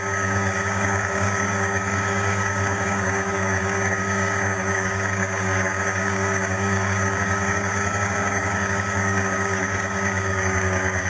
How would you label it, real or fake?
fake